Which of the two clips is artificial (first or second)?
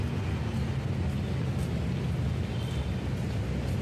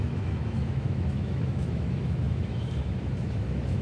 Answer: second